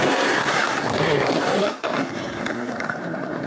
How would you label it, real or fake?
fake